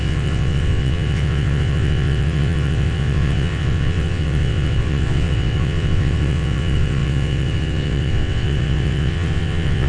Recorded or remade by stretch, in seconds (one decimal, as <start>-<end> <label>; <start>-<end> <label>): 0.0-9.9 remade